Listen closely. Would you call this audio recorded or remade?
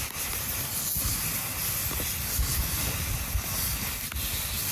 recorded